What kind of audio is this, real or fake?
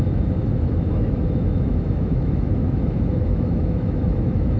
fake